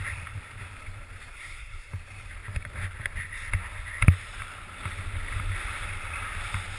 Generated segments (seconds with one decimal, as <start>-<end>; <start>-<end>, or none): 1.3-1.9